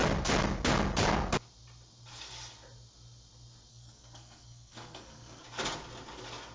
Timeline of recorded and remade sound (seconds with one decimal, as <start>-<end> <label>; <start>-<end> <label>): 0.0-3.7 recorded; 3.7-5.4 remade; 5.4-6.5 recorded